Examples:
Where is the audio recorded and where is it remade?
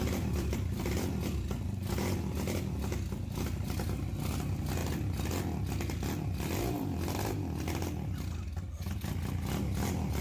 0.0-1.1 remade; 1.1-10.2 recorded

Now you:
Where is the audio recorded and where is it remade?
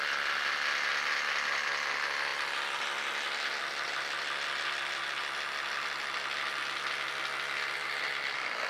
0.0-8.7 recorded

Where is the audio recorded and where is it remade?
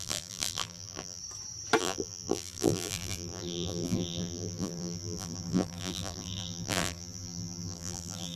0.0-1.2 remade; 1.2-1.8 recorded; 1.8-8.4 remade